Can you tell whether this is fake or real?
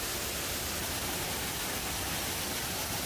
real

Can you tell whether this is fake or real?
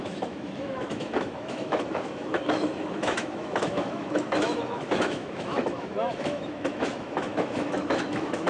fake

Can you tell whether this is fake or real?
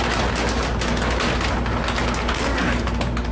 real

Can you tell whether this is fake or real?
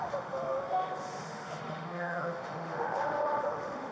fake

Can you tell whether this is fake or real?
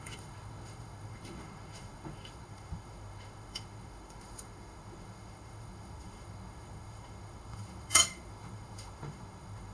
fake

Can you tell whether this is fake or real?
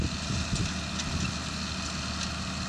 real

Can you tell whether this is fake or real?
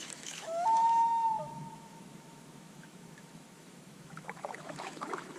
fake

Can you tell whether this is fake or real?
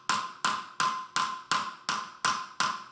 real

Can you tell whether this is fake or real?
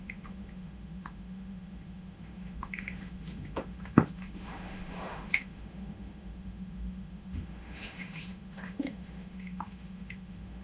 fake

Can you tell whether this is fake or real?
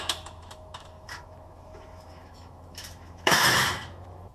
fake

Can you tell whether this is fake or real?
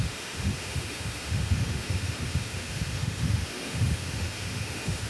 fake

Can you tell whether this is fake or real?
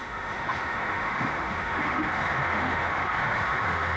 fake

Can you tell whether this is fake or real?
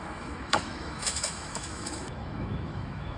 fake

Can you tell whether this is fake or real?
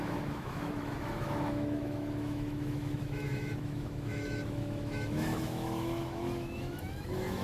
fake